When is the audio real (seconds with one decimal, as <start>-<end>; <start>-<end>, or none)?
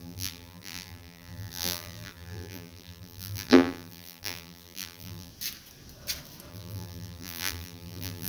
5.3-6.5